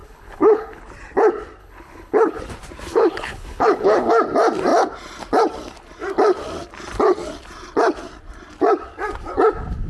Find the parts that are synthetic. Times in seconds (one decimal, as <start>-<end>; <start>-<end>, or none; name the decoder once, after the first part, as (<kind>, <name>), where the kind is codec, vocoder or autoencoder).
0.0-0.8 (codec, HILCodec); 1.6-2.4; 2.9-4.1